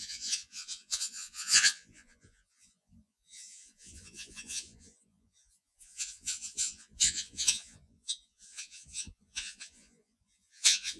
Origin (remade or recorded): remade